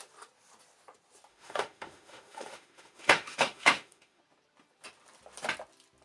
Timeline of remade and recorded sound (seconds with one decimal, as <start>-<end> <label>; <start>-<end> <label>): 0.0-1.3 recorded; 1.3-4.2 remade; 4.2-6.0 recorded